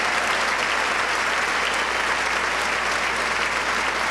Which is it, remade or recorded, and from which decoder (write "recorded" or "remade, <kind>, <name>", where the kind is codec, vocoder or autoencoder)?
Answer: recorded